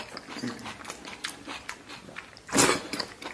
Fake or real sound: real